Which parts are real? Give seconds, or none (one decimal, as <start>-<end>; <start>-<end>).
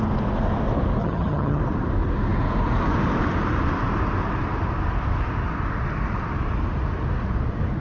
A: 0.0-1.0; 1.6-7.8